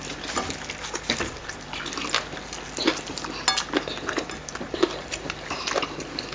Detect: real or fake real